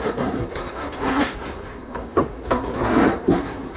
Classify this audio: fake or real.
fake